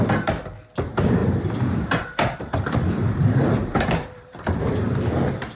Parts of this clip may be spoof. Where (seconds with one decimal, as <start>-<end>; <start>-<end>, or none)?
1.2-4.6